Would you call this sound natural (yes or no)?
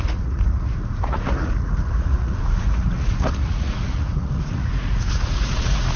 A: no